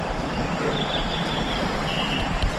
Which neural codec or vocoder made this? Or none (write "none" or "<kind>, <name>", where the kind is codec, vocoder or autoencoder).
none